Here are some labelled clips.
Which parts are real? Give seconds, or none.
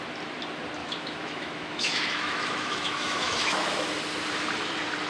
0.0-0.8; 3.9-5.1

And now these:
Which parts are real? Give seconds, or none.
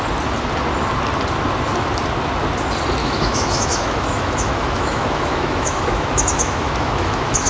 0.0-3.0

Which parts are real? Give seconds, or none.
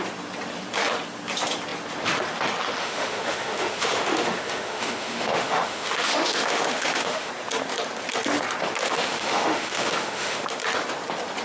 0.0-2.8; 7.3-8.8; 10.6-11.4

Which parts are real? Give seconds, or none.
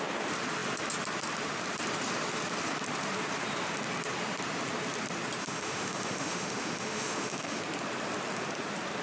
0.0-5.4; 7.6-9.0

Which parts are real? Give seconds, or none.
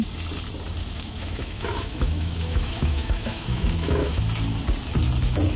0.0-0.8; 4.2-5.6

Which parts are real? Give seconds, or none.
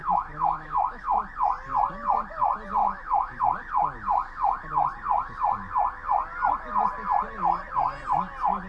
1.2-2.8; 3.4-8.7